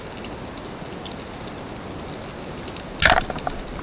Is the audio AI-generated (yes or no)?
no